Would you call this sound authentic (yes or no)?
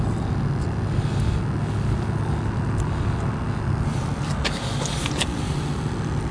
yes